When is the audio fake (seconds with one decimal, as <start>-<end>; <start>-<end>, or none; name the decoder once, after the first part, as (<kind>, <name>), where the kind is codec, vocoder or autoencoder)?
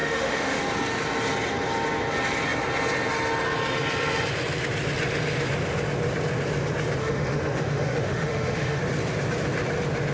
0.0-0.6 (autoencoder, DAC-VAE); 7.0-8.8